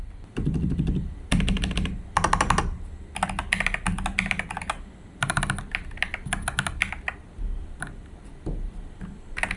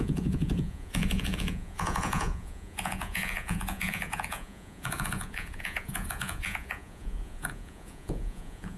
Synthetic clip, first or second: second